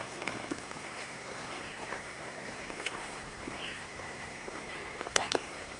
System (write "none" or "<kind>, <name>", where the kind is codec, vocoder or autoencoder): codec, SNAC